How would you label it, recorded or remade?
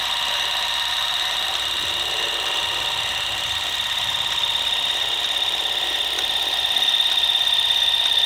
recorded